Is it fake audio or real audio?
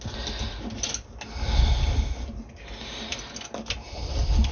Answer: real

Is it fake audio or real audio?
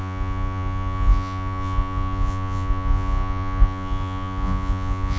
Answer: fake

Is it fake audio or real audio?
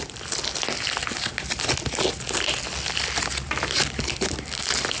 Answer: real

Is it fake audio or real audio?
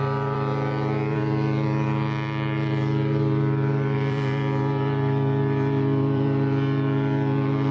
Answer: fake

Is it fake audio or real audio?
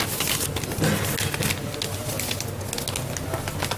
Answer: real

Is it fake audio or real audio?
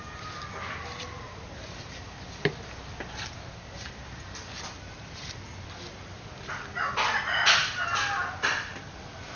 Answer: real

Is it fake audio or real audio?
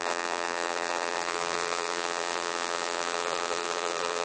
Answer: fake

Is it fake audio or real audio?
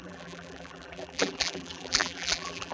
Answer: fake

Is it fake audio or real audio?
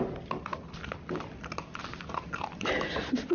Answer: real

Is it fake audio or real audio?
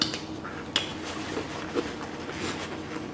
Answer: real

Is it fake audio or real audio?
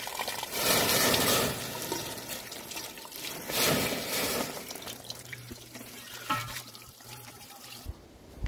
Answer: fake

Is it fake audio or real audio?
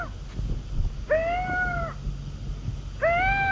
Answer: real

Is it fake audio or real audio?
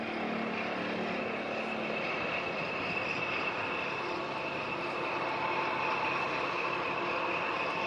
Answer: real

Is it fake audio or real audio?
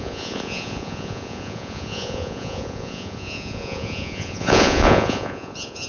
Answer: fake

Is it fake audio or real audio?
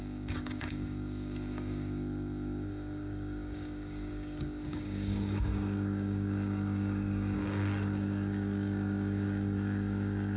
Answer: fake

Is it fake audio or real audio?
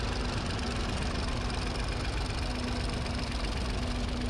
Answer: real